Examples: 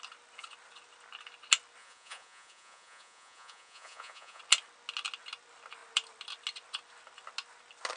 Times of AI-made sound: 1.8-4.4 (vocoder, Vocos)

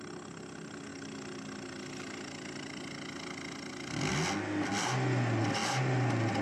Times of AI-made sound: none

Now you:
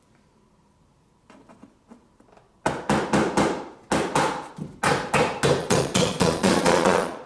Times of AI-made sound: 5.6-7.3 (vocoder, Vocos)

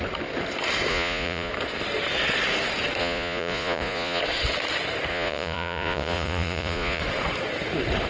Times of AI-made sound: 0.9-1.5 (vocoder, Vocos); 3.0-4.2; 5.1-7.0

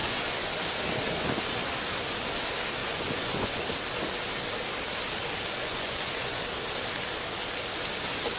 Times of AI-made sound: 0.0-0.5 (vocoder, Vocos); 2.8-3.6; 5.6-6.4

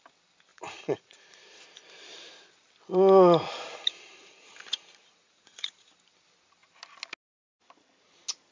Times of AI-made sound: 0.5-1.6 (vocoder, Vocos); 4.2-5.9

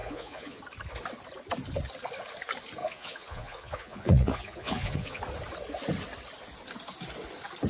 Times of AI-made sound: 0.0-0.6 (vocoder, Vocos); 2.8-5.2